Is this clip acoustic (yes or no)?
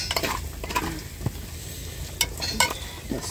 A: yes